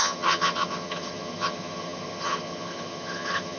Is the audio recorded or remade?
remade